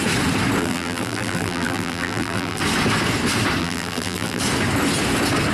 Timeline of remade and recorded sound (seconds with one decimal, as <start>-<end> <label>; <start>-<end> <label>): 0.0-0.6 recorded; 0.6-2.6 remade; 2.6-3.6 recorded; 3.6-4.4 remade; 4.4-5.5 recorded